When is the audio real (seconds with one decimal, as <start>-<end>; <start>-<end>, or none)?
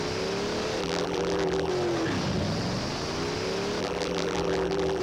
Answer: 0.0-0.8; 1.7-3.8